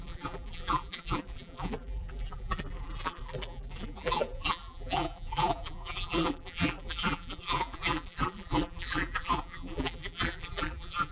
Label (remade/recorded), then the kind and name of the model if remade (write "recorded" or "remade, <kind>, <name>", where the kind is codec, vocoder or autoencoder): remade, vocoder, BigVGAN v2